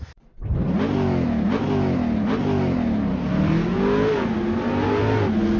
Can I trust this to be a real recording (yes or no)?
yes